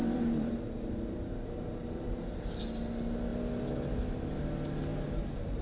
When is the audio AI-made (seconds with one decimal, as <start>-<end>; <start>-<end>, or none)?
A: 0.0-2.6; 4.9-5.6